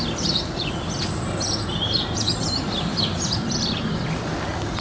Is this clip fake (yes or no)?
no